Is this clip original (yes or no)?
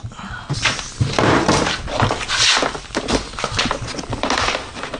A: yes